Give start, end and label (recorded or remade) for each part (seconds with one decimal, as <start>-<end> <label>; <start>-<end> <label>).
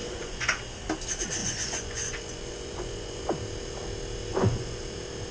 0.0-0.6 remade; 0.6-1.4 recorded; 1.4-3.2 remade; 3.2-4.3 recorded; 4.3-4.8 remade; 4.8-5.3 recorded